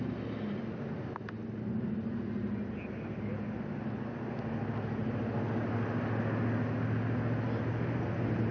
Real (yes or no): yes